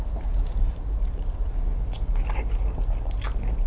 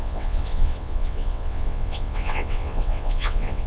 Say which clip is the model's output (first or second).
second